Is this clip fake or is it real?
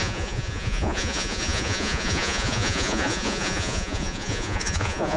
fake